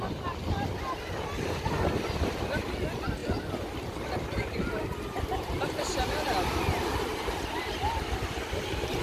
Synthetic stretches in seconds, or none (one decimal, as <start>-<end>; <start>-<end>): none